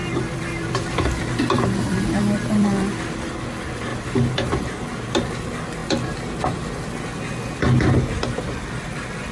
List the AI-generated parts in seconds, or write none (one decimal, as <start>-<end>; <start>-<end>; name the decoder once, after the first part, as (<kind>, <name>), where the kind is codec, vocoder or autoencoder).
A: 0.0-3.5 (vocoder, BigVGAN v2); 3.9-4.6